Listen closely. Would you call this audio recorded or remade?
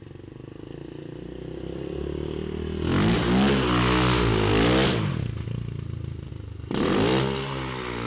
recorded